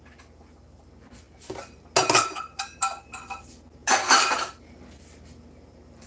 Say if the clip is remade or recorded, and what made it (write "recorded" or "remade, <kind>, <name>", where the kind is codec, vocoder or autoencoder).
recorded